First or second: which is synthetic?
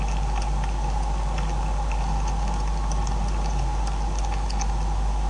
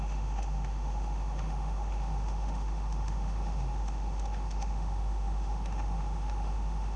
second